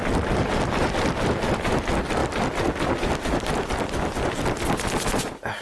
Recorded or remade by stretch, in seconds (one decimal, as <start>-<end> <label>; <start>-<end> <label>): 0.0-5.6 recorded